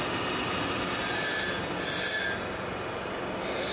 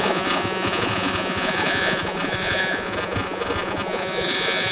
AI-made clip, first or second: second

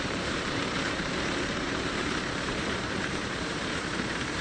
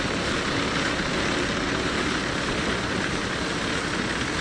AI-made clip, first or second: first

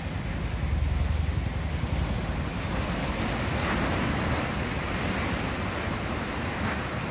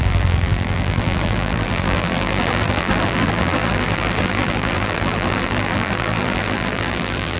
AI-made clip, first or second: second